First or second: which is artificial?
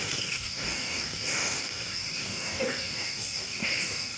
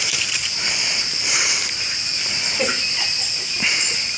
first